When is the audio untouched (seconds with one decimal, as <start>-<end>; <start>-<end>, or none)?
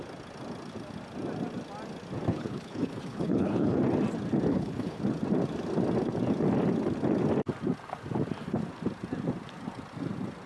0.0-2.3; 3.8-4.5; 5.0-10.5